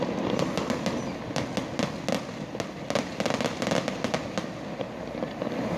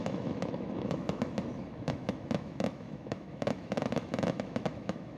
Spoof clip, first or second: second